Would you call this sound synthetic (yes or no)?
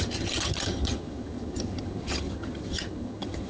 yes